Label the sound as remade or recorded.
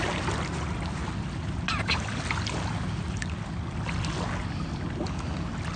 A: recorded